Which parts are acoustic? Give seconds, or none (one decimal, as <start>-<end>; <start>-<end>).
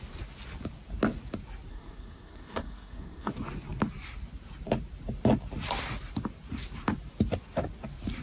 0.0-1.7; 3.3-8.2